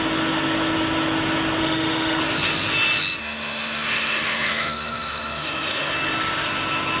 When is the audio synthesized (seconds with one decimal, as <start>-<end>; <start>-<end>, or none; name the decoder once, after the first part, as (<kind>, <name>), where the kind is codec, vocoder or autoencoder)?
1.6-2.2 (autoencoder, DAC-VAE); 3.2-5.9